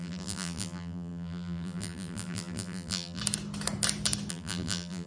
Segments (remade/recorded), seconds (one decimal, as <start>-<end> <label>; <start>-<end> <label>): 0.0-3.2 remade; 3.2-4.3 recorded; 4.3-5.1 remade